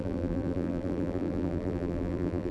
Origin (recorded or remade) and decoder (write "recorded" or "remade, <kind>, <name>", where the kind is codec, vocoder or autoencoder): remade, vocoder, BigVGAN v2